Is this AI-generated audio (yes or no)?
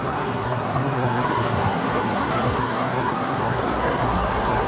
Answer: yes